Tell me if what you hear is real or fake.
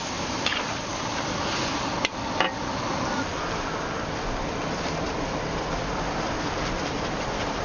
real